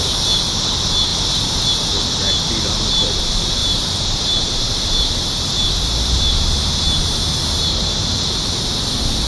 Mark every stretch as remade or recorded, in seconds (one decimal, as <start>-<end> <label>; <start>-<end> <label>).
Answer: 0.0-3.6 recorded; 3.6-8.0 remade; 8.0-9.3 recorded